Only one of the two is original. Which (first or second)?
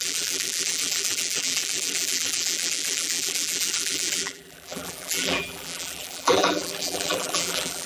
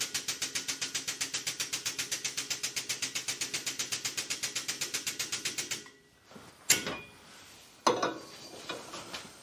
second